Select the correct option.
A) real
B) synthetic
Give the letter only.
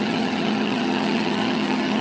B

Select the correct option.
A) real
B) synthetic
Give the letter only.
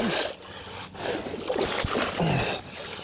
A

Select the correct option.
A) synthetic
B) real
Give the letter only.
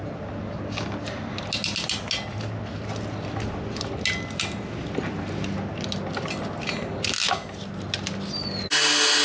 B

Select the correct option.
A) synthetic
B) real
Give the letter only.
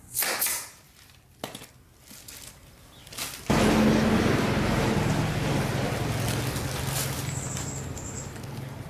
B